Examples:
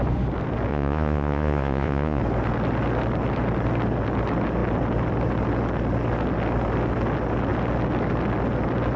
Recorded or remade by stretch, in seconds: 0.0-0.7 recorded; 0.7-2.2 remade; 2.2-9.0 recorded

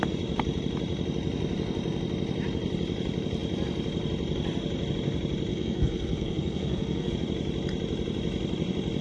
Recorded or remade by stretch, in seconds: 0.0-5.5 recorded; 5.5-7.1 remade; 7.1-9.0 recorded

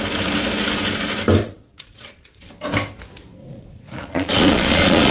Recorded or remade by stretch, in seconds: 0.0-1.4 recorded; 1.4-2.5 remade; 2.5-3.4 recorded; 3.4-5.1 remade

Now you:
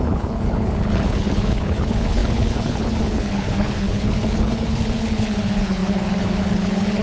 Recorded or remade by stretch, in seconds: 0.0-7.0 remade